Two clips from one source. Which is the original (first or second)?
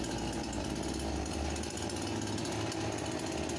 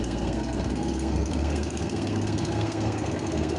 first